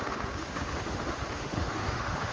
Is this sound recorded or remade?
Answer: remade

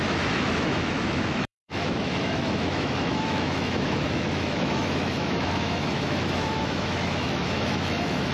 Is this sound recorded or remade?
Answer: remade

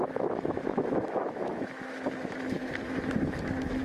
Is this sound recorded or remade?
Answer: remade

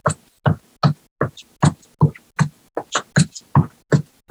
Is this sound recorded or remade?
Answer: recorded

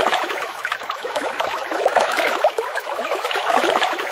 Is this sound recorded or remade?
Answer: remade